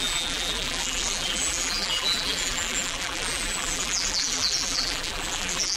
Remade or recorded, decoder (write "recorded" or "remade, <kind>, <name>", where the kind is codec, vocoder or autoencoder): remade, vocoder, BigVGAN v2